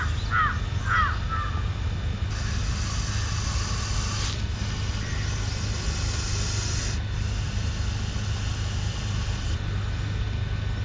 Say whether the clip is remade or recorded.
recorded